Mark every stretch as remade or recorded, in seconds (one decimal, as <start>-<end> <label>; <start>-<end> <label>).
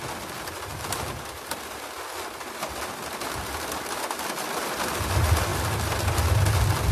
0.0-6.9 recorded